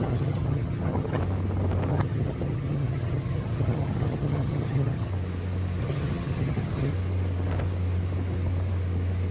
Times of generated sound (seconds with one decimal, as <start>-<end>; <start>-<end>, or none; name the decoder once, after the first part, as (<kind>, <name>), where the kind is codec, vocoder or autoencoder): 0.0-1.2 (vocoder, HiFi-GAN); 1.9-5.1; 5.8-6.9